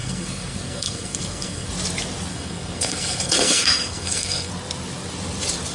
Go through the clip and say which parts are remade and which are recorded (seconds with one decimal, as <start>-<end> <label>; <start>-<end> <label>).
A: 0.0-1.7 remade; 1.7-2.3 recorded; 2.3-4.5 remade; 4.5-5.7 recorded